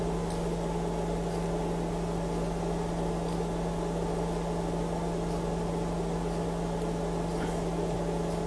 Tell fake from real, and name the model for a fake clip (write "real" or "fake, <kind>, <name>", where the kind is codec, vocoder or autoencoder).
real